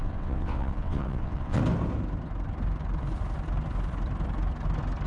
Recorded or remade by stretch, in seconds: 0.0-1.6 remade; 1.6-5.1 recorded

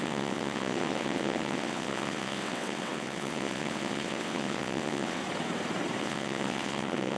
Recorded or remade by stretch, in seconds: 0.0-5.2 remade; 5.2-6.0 recorded; 6.0-7.2 remade

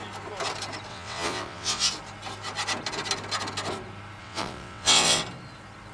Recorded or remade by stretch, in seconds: 0.0-0.9 recorded; 0.9-1.9 remade; 1.9-4.2 recorded; 4.2-5.2 remade; 5.2-5.9 recorded